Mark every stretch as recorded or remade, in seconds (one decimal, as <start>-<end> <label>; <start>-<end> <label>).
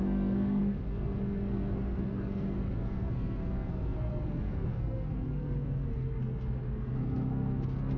0.0-8.0 remade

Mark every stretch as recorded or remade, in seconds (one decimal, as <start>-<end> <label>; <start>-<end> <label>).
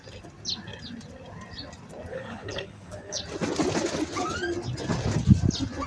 0.0-2.1 recorded; 2.1-3.2 remade; 3.2-5.9 recorded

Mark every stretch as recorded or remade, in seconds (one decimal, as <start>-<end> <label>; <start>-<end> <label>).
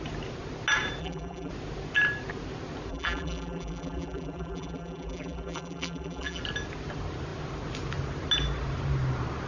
0.0-1.0 recorded; 1.0-1.5 remade; 1.5-2.9 recorded; 2.9-6.4 remade; 6.4-9.5 recorded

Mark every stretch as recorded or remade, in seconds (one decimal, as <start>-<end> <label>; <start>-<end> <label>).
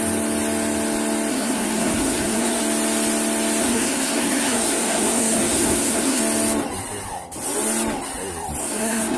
0.0-1.3 recorded; 1.3-2.6 remade; 2.6-3.6 recorded; 3.6-6.2 remade; 6.2-8.6 recorded; 8.6-9.2 remade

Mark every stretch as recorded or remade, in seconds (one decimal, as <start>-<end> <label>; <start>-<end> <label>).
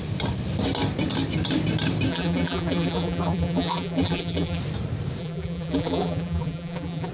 0.0-2.1 recorded; 2.1-4.6 remade; 4.6-5.2 recorded; 5.2-7.1 remade